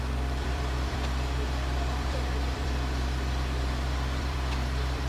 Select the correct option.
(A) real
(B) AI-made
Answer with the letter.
B